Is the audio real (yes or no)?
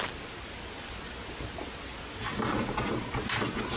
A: yes